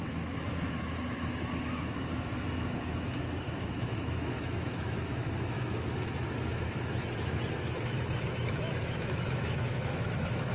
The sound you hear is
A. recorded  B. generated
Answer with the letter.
B